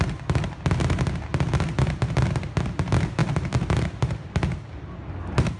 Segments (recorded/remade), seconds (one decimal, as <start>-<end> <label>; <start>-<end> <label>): 0.0-5.6 recorded

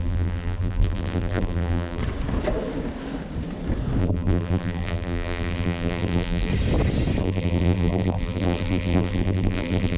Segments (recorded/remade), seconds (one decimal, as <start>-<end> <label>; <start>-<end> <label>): 0.0-2.0 remade; 2.0-4.0 recorded; 4.0-6.5 remade; 6.5-7.2 recorded; 7.2-10.0 remade

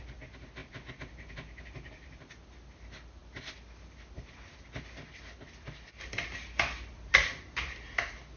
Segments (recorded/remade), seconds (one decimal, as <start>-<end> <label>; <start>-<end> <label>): 0.0-8.4 recorded

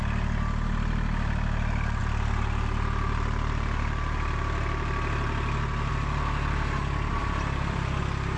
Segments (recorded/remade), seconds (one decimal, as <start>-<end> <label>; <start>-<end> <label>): 0.0-7.1 recorded; 7.1-8.0 remade; 8.0-8.4 recorded

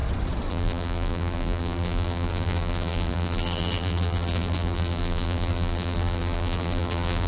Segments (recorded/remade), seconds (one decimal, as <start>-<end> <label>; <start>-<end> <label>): 0.0-0.5 recorded; 0.5-7.3 remade

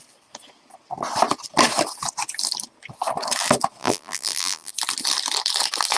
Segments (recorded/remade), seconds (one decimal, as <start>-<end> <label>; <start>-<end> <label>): 0.0-3.8 recorded; 3.8-4.7 remade; 4.7-6.0 recorded

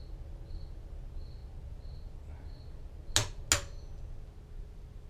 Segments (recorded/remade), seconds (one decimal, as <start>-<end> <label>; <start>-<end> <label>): 0.0-5.1 recorded

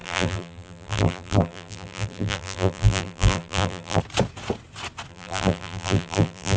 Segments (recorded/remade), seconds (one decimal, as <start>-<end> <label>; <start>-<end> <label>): 0.0-4.0 remade; 4.0-5.1 recorded; 5.1-6.6 remade